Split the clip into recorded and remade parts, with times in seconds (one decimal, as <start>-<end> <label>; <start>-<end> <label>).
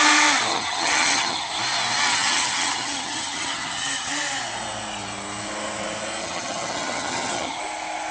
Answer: 0.0-0.5 recorded; 0.5-1.5 remade; 1.5-2.1 recorded; 2.1-4.1 remade; 4.1-6.2 recorded; 6.2-7.6 remade; 7.6-8.1 recorded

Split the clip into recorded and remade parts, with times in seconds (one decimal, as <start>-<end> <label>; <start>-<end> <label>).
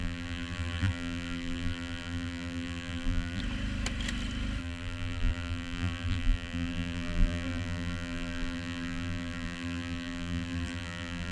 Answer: 0.0-3.4 remade; 3.4-4.6 recorded; 4.6-11.3 remade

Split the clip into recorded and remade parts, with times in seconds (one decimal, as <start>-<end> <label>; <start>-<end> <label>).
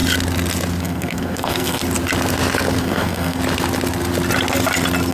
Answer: 0.0-0.8 recorded; 0.8-1.8 remade; 1.8-2.8 recorded; 2.8-3.4 remade; 3.4-5.1 recorded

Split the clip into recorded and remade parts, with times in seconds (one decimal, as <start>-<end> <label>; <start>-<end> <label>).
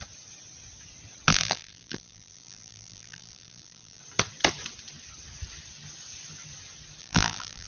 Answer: 0.0-1.3 recorded; 1.3-4.0 remade; 4.0-7.0 recorded; 7.0-7.7 remade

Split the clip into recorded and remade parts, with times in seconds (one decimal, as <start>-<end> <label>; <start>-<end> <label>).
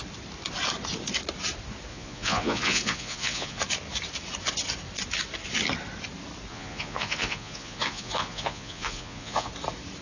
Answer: 0.0-1.9 recorded; 1.9-3.6 remade; 3.6-6.5 recorded; 6.5-9.5 remade; 9.5-10.0 recorded